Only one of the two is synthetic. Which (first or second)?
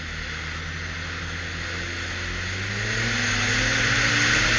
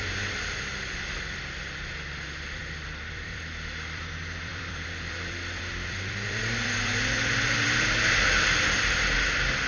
second